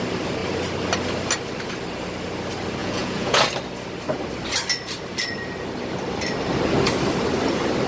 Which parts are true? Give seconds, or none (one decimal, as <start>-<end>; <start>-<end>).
0.0-2.8; 3.4-7.9